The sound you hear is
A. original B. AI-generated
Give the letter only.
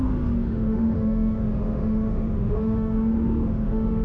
B